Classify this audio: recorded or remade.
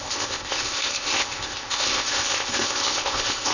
remade